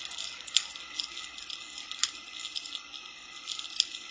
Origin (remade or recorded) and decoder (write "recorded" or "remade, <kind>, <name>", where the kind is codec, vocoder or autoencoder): recorded